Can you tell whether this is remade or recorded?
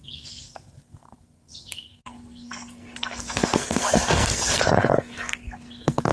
remade